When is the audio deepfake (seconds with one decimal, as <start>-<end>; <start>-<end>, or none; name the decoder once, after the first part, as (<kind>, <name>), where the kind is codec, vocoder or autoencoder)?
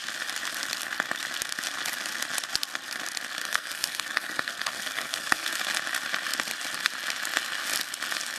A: 3.4-5.5 (codec, SNAC)